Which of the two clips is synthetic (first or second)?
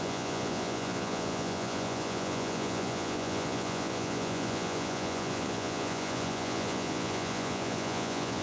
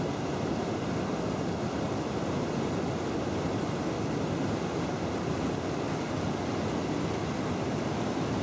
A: first